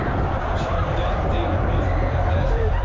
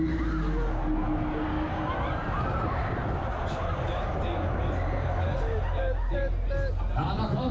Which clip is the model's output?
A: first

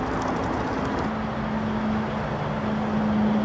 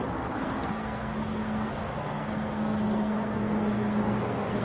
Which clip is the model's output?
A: second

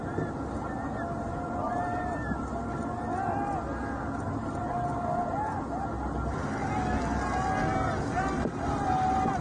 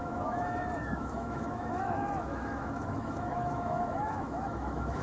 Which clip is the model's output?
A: second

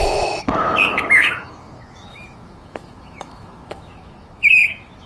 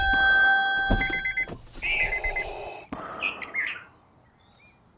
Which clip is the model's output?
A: first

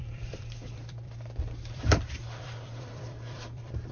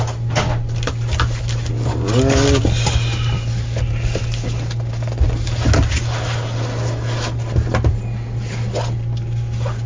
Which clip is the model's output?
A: first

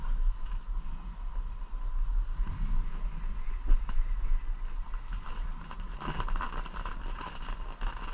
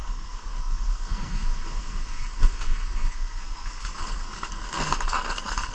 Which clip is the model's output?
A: second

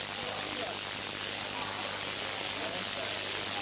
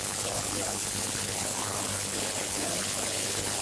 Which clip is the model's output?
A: second